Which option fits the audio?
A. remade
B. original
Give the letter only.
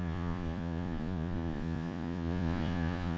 A